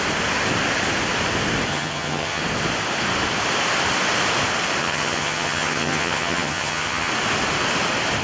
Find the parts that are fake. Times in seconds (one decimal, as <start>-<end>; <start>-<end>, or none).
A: 1.7-2.4; 4.8-7.1